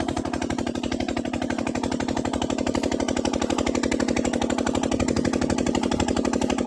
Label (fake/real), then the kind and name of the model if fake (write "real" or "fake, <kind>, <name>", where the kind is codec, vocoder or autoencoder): fake, vocoder, BigVGAN v2